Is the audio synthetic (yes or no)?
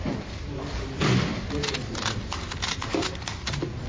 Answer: no